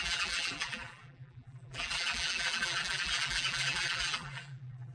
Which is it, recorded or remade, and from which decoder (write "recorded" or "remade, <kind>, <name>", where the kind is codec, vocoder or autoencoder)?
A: remade, vocoder, BigVGAN v2